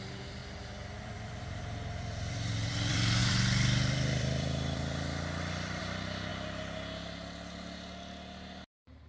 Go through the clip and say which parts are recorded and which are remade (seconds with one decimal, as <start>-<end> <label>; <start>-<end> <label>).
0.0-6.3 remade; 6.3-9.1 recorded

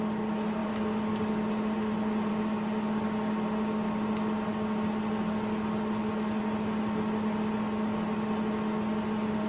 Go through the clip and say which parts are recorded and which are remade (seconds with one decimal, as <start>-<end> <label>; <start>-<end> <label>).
0.0-9.5 recorded

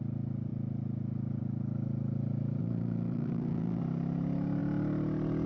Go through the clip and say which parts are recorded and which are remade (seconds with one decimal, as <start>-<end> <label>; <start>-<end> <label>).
0.0-2.6 recorded; 2.6-3.8 remade; 3.8-5.5 recorded

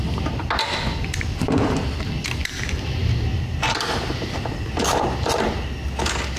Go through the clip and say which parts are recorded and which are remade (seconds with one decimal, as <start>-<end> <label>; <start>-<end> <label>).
0.0-0.9 recorded; 0.9-1.5 remade; 1.5-2.4 recorded; 2.4-6.0 remade; 6.0-6.4 recorded